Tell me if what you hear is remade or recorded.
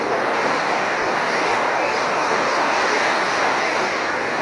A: remade